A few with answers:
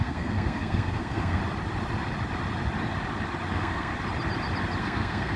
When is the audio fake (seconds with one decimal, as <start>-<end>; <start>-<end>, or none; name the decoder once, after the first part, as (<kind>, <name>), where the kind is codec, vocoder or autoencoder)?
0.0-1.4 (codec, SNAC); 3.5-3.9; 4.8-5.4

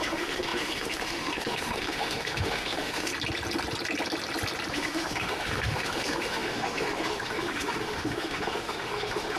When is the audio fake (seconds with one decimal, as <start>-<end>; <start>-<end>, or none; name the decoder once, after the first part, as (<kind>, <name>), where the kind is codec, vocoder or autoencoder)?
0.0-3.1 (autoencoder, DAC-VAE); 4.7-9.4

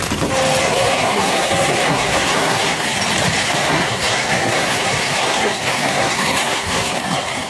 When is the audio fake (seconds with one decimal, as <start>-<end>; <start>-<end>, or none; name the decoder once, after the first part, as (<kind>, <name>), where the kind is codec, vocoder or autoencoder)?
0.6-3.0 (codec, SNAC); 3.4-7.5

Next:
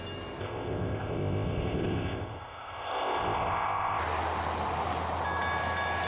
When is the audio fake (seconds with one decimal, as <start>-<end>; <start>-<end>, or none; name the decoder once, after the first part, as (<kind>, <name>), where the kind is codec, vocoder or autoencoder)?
0.4-4.0 (codec, ZipCodec)